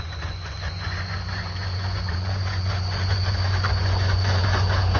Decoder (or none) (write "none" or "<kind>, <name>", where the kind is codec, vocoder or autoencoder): vocoder, Vocos